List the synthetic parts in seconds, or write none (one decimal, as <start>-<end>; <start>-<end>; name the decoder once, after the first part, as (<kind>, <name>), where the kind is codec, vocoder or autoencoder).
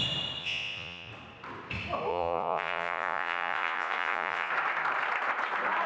0.4-1.1 (vocoder, Vocos); 2.1-4.5